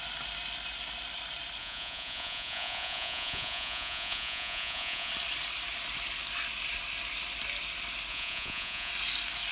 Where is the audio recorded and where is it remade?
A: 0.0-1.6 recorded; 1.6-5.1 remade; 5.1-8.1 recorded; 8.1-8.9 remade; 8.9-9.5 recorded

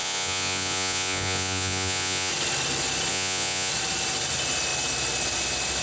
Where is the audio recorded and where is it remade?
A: 0.0-2.3 remade; 2.3-3.1 recorded; 3.1-3.7 remade; 3.7-5.8 recorded